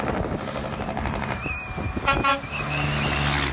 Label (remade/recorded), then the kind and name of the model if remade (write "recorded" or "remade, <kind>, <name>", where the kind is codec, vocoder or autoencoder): recorded